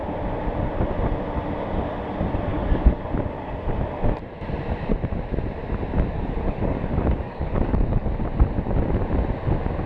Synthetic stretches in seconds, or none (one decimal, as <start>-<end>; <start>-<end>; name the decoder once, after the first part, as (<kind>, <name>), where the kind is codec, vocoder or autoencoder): 2.5-3.0 (codec, DAC); 6.1-8.1